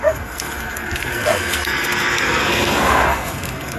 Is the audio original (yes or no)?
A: no